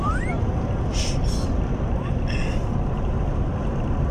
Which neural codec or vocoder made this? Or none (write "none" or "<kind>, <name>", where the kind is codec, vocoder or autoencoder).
none